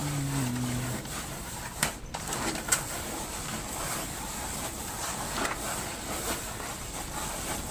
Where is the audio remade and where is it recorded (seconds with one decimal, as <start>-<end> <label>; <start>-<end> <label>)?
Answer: 0.0-1.5 recorded; 1.5-7.7 remade